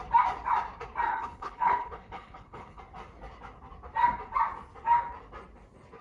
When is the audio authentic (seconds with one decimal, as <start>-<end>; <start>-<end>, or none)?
0.0-1.1; 2.8-6.0